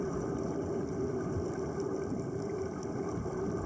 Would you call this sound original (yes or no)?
yes